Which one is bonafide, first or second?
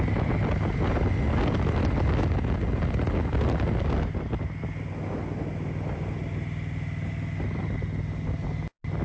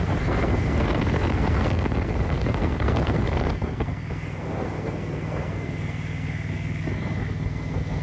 first